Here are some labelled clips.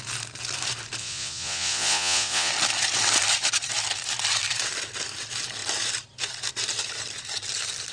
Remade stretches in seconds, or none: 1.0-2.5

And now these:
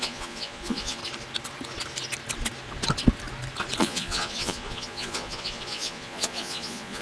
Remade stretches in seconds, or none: 0.0-1.0; 3.8-7.0